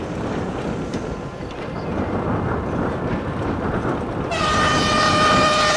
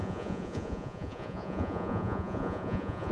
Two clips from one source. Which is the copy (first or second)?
second